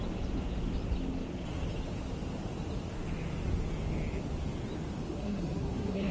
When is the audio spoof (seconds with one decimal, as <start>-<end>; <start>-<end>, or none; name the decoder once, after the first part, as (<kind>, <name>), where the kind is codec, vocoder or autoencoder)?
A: 5.2-6.1 (codec, SNAC)